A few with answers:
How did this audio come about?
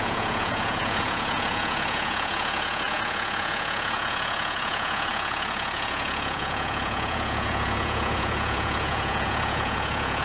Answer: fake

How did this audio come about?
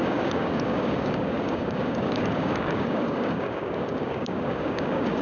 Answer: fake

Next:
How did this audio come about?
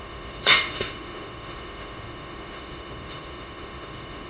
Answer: fake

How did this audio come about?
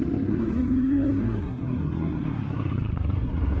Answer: fake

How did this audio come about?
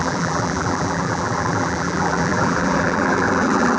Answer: fake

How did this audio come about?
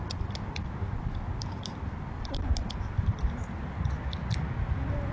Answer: real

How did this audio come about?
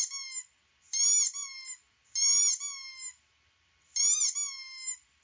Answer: real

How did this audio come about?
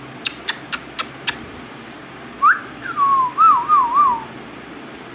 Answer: real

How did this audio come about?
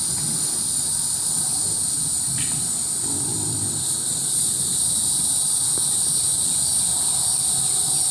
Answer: fake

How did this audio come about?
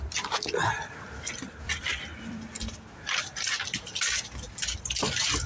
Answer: fake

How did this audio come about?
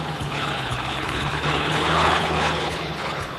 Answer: fake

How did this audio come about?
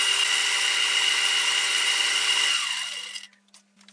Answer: real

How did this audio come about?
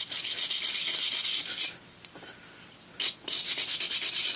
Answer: real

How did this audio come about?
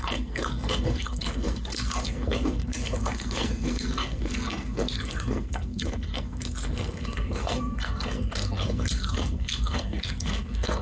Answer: fake